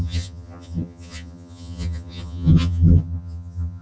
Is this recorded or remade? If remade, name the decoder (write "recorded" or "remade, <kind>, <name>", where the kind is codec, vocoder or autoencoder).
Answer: remade, vocoder, HiFi-GAN